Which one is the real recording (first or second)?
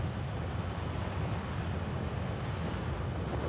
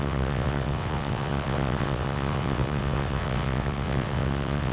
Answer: first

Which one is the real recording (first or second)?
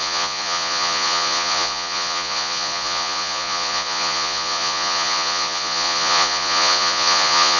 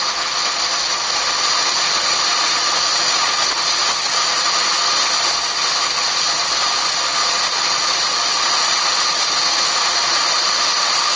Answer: second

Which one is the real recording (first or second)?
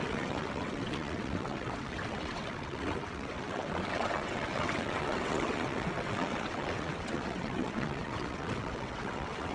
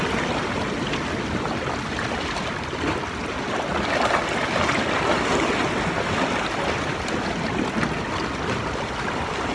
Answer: second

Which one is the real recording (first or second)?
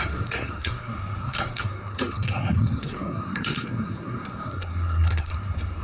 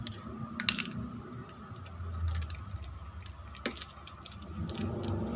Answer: second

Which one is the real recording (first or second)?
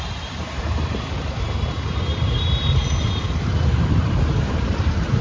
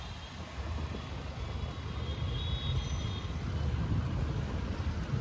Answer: second